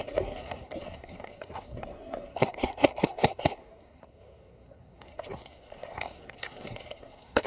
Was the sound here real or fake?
fake